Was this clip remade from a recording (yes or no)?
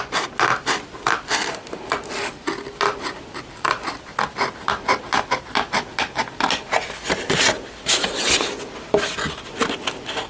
no